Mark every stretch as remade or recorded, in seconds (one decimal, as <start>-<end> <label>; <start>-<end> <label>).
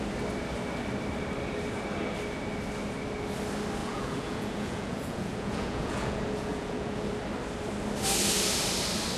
0.0-3.8 recorded; 3.8-7.1 remade; 7.1-9.2 recorded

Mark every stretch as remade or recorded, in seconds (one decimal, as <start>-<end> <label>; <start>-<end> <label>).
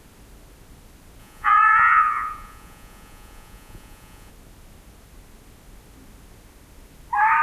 0.0-1.2 recorded; 1.2-4.3 remade; 4.3-7.4 recorded